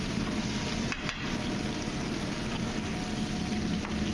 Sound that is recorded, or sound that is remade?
recorded